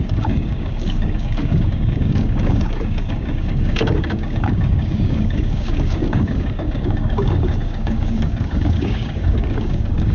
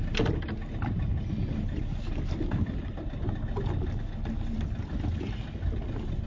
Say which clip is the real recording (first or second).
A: second